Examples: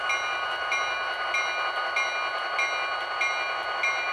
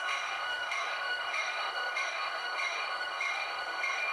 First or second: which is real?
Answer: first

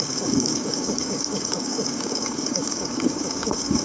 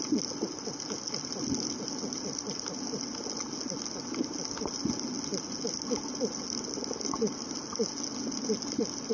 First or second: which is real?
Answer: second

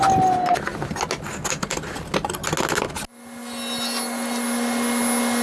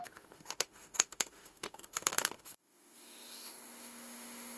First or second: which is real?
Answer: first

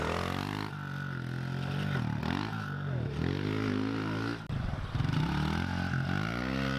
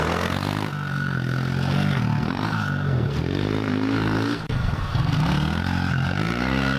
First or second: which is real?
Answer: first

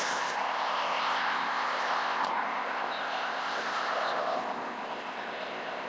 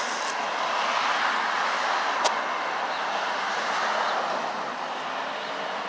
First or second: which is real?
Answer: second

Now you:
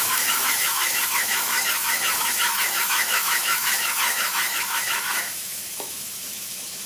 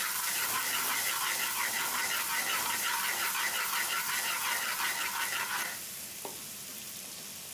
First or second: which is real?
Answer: second